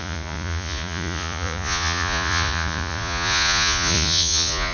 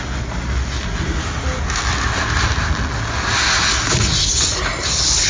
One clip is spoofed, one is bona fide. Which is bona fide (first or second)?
second